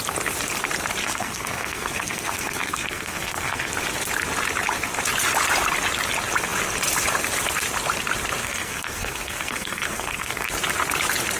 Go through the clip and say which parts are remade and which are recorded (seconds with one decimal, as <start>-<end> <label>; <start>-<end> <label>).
0.0-1.0 recorded; 1.0-3.7 remade; 3.7-8.4 recorded; 8.4-10.5 remade; 10.5-11.4 recorded